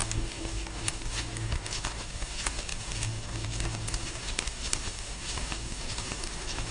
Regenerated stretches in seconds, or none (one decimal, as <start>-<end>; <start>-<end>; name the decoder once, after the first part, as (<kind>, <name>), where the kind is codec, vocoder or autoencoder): 0.0-6.7 (codec, DAC)